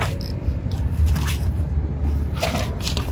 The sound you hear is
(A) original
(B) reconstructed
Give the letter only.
B